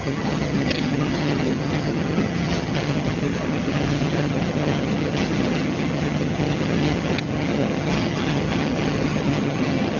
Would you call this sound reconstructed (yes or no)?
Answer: yes